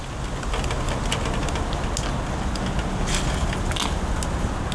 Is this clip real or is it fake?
real